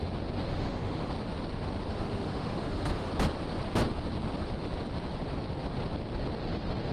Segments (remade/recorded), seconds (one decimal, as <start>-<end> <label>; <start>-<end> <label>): 0.0-0.5 recorded; 0.5-1.1 remade; 1.1-1.9 recorded; 1.9-3.1 remade; 3.1-6.9 recorded